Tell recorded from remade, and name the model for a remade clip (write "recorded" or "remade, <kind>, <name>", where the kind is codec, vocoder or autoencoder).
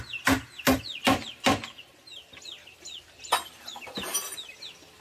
recorded